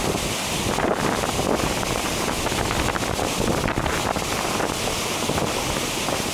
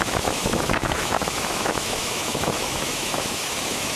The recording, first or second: first